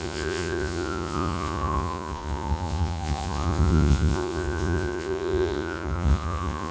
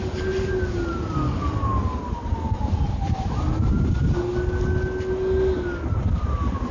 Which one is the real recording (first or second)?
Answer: second